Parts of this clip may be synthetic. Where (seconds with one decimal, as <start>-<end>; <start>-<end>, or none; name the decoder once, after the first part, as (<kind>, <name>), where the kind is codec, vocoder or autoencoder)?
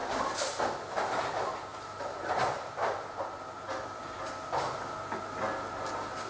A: none